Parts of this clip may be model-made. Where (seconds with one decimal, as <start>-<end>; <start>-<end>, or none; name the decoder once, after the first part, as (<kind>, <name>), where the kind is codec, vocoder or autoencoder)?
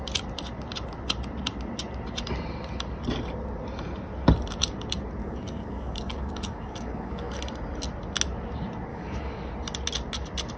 5.2-7.4 (codec, DAC); 8.9-9.5